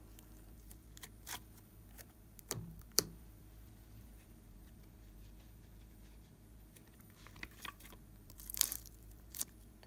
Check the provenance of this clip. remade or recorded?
remade